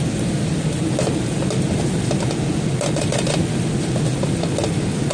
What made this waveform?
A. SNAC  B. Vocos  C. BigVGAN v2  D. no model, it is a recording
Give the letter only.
D